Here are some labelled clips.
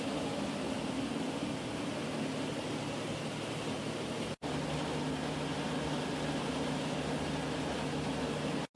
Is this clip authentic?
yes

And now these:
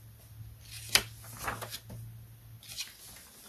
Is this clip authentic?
yes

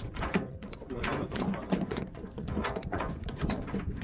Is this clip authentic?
no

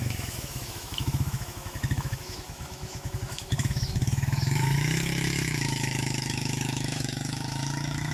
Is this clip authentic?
no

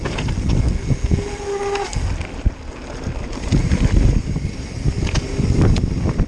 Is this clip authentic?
yes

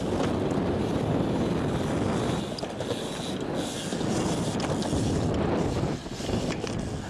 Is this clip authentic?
yes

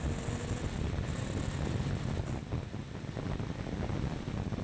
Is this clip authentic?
yes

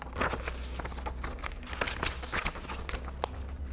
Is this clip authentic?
yes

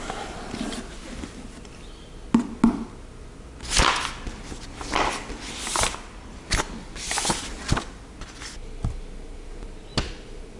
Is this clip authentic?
yes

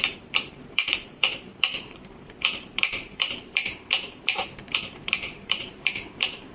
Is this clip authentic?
no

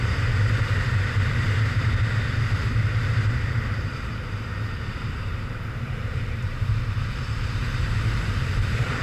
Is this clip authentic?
no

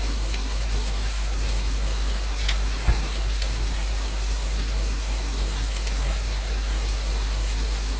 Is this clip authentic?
no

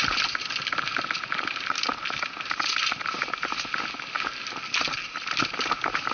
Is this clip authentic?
yes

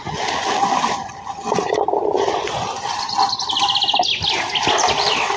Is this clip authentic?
yes